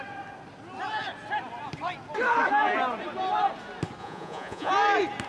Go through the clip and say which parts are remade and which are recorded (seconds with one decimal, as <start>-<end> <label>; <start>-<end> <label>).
0.0-4.0 recorded; 4.0-4.7 remade; 4.7-5.3 recorded